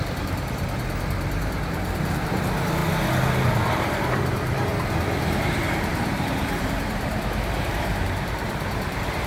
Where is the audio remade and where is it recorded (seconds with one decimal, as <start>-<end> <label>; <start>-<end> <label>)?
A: 0.0-2.8 remade; 2.8-3.7 recorded; 3.7-4.7 remade; 4.7-5.4 recorded; 5.4-9.3 remade

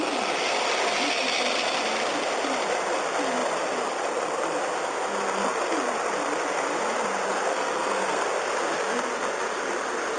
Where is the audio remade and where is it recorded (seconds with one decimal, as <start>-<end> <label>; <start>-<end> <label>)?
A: 0.0-7.5 recorded; 7.5-8.2 remade; 8.2-10.2 recorded